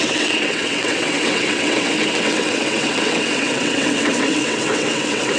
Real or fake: fake